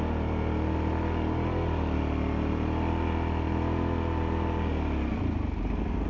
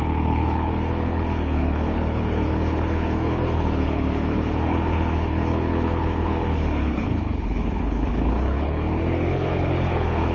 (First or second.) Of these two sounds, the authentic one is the first